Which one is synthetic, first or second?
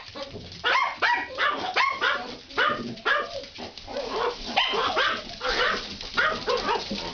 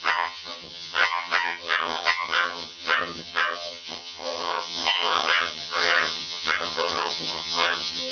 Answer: second